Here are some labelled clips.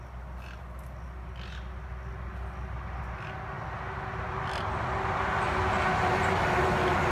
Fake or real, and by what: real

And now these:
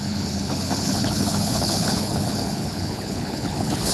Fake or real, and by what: fake, codec, HILCodec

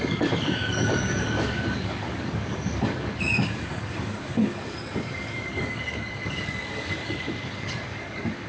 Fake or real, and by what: fake, codec, DAC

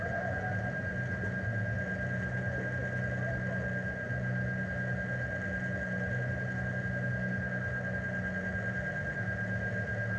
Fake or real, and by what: real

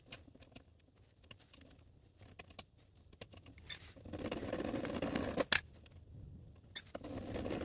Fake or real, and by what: real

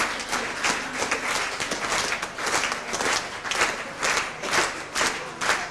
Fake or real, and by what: real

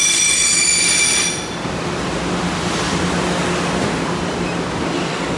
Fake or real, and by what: real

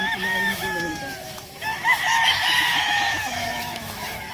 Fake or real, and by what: fake, autoencoder, DAC-VAE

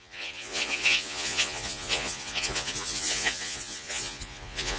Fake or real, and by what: fake, vocoder, Vocos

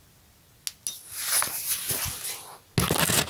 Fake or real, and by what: real